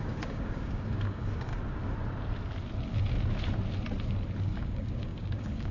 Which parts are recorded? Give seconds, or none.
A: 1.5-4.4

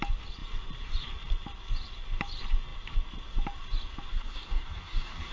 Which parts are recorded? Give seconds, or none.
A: 0.0-4.1

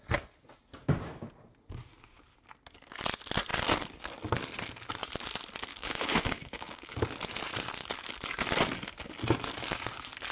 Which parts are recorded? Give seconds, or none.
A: 0.0-0.8; 1.3-5.7; 6.9-10.3